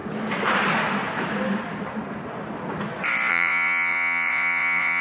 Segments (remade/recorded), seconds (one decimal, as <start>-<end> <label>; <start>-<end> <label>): 0.0-3.3 recorded; 3.3-5.0 remade